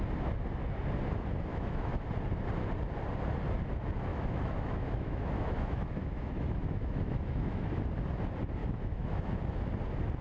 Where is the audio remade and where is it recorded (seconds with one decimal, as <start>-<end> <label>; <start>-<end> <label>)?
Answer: 0.0-1.5 recorded; 1.5-2.1 remade; 2.1-4.1 recorded; 4.1-7.8 remade; 7.8-8.6 recorded; 8.6-9.4 remade; 9.4-10.2 recorded